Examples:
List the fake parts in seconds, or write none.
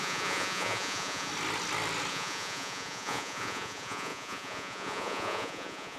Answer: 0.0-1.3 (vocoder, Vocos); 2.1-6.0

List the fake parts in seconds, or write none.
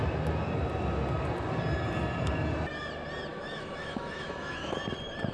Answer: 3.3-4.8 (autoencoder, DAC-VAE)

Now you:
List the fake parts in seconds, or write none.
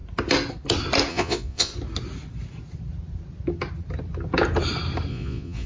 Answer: 1.1-1.7 (vocoder, Vocos); 5.1-5.7